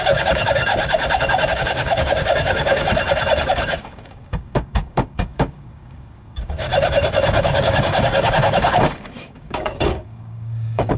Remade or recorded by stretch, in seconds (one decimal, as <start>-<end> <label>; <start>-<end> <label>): 0.0-0.7 remade; 0.7-1.5 recorded; 1.5-2.9 remade; 2.9-3.5 recorded; 3.5-6.7 remade; 6.7-7.4 recorded; 7.4-11.0 remade